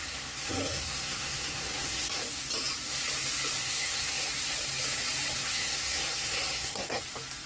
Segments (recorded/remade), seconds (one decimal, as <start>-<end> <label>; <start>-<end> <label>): 0.0-2.2 remade; 2.2-3.6 recorded; 3.6-4.3 remade; 4.3-5.4 recorded; 5.4-7.0 remade; 7.0-7.5 recorded